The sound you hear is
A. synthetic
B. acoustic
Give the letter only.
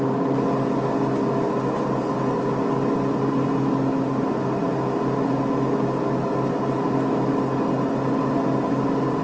B